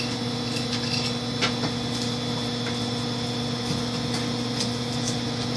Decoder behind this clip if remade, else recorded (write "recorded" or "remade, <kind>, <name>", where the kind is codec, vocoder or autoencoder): recorded